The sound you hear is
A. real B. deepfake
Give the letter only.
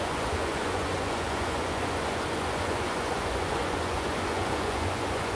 B